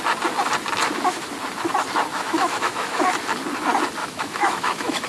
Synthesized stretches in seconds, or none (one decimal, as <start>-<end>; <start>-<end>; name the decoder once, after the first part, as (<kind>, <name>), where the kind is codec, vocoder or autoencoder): 2.1-3.0 (autoencoder, DAC-VAE); 4.0-5.1